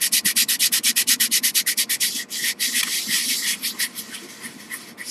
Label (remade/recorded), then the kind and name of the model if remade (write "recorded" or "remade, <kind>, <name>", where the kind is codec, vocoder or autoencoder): remade, vocoder, BigVGAN v2